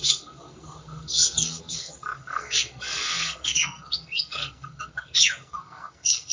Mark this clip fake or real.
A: fake